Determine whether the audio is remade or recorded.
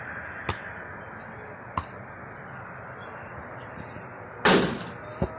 recorded